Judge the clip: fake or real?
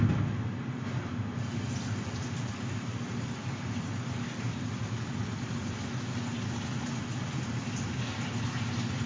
real